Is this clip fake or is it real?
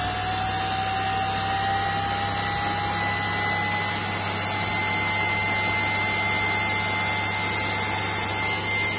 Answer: real